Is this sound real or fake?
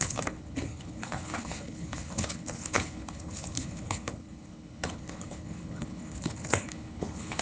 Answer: fake